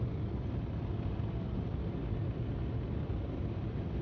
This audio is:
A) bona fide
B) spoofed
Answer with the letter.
A